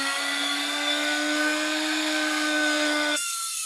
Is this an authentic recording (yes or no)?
no